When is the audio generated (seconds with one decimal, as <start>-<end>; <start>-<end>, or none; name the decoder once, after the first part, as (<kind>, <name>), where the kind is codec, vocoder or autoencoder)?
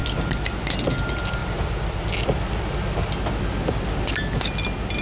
none